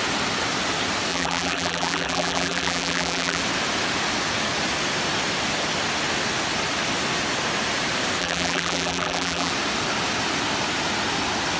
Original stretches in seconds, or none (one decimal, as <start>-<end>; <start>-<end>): 0.0-1.1; 3.4-8.2; 9.5-11.6